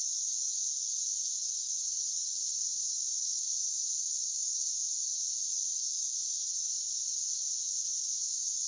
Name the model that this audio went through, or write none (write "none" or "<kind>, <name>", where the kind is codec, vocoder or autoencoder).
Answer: codec, DAC